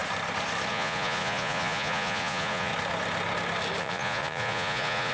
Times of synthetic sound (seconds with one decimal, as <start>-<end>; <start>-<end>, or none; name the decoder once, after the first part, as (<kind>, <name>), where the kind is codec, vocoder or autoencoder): 0.7-2.7 (vocoder, Vocos); 3.8-5.1